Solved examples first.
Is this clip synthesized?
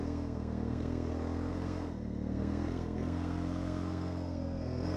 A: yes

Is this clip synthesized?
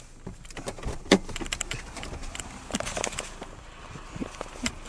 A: no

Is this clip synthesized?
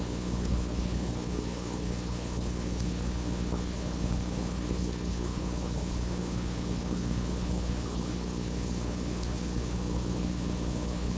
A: yes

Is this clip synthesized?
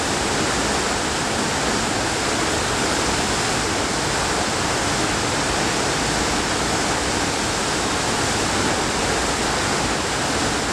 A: no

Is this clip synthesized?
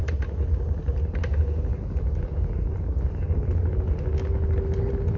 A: no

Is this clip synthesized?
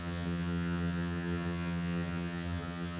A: yes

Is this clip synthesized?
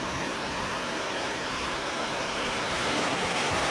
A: yes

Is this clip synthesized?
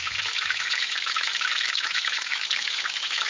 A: yes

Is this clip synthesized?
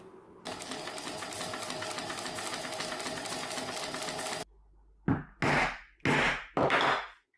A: no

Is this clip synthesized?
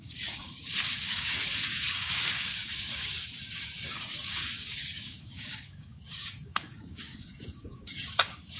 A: yes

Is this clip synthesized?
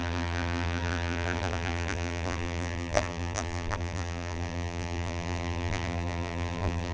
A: yes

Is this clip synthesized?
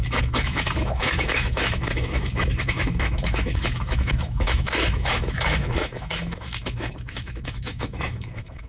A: yes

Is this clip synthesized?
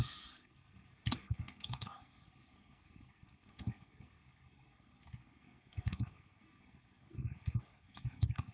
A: yes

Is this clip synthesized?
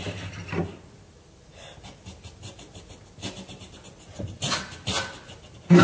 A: no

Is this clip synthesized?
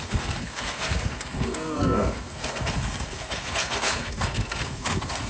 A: yes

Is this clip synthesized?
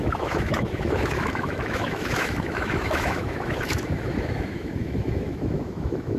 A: yes